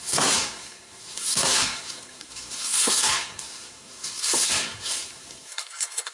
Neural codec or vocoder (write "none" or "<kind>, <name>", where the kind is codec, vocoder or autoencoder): codec, SNAC